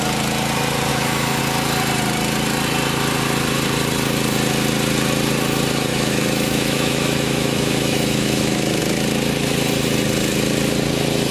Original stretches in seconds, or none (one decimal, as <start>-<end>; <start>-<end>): 0.0-0.9; 1.4-5.9; 8.8-11.3